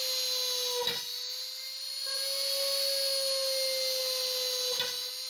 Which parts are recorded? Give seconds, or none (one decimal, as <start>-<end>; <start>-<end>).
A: 0.0-5.3